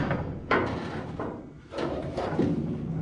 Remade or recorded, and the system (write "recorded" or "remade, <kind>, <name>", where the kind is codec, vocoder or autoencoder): recorded